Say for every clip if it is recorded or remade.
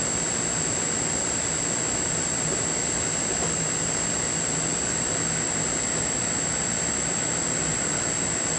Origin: recorded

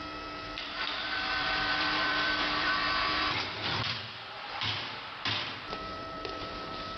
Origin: remade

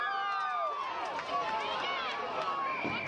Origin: recorded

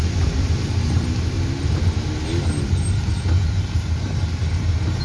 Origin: recorded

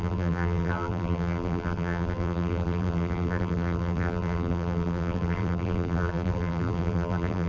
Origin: remade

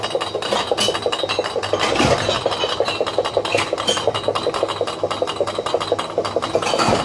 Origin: recorded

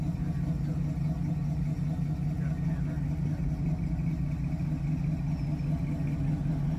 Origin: recorded